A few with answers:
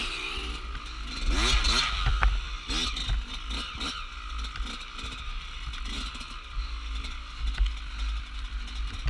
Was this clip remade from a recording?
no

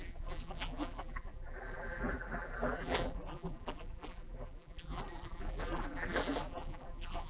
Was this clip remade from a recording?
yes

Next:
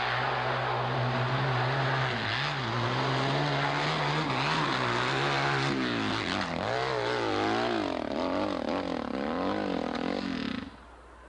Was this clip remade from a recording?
no